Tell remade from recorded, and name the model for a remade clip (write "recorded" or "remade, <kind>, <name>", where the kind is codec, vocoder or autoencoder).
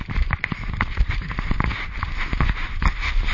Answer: recorded